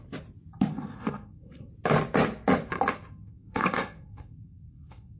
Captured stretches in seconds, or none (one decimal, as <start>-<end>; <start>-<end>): 0.0-0.7; 1.7-3.1